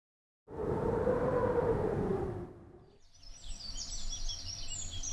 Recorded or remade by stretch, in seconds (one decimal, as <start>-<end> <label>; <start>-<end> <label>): 0.0-0.6 recorded; 0.6-1.4 remade; 1.4-5.1 recorded